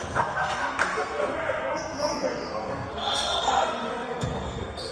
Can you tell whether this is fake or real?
fake